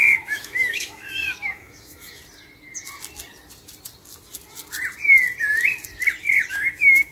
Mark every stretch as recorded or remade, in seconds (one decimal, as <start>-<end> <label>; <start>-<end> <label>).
0.0-2.2 remade; 2.2-6.5 recorded; 6.5-7.1 remade